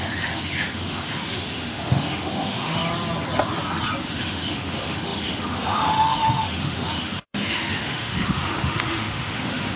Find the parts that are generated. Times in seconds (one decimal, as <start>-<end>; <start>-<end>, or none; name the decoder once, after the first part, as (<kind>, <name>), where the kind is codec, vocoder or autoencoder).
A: 0.0-2.8 (autoencoder, DAC-VAE); 4.0-9.8